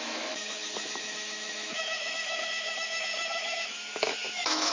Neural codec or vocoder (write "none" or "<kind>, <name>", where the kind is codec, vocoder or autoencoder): autoencoder, DAC-VAE